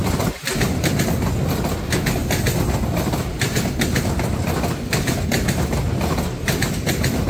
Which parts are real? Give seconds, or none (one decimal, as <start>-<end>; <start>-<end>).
0.0-7.3